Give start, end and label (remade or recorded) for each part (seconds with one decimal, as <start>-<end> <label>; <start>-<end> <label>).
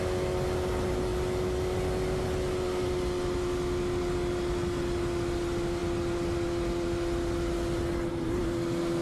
0.0-9.0 recorded